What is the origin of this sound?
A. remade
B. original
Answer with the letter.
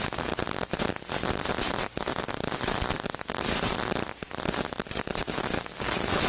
B